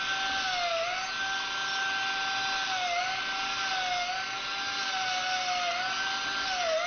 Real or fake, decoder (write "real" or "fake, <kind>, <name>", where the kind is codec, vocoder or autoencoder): real